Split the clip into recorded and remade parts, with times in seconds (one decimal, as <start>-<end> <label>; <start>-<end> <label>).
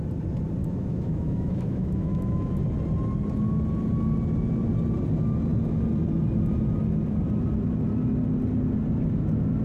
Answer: 0.0-0.6 recorded; 0.6-2.6 remade; 2.6-9.6 recorded